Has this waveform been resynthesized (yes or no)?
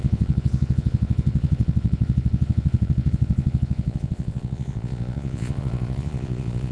yes